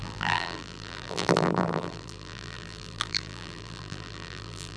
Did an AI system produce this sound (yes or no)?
yes